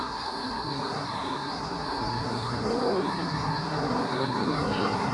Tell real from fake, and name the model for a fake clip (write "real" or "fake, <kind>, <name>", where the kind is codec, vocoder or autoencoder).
fake, codec, SNAC